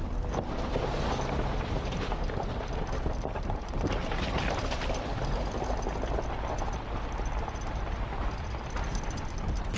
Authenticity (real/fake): real